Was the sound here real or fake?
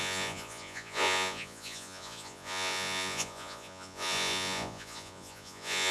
fake